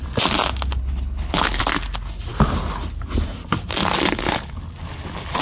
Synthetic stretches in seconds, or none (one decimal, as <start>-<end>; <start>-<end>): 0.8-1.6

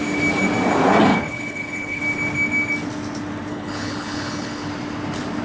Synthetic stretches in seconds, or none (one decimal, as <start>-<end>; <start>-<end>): 1.1-2.0; 3.5-4.7

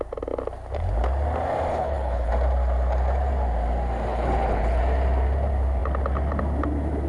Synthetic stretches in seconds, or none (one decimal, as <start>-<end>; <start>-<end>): 1.7-2.3; 4.1-4.8